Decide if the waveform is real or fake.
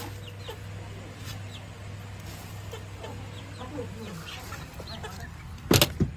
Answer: real